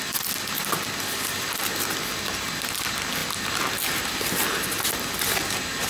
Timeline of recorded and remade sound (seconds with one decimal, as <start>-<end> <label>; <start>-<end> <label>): 0.0-5.9 recorded